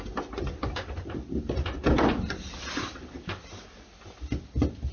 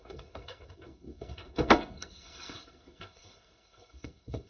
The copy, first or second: second